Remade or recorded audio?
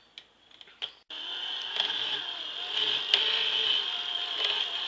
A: recorded